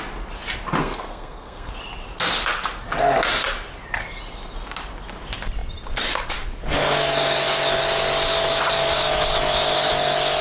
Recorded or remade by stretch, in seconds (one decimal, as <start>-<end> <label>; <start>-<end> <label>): 0.0-0.8 recorded; 0.8-1.7 remade; 1.7-10.4 recorded